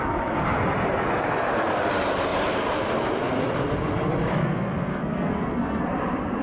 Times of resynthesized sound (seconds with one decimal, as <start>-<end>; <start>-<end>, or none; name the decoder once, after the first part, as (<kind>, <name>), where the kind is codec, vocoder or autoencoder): 4.3-5.8 (codec, SNAC)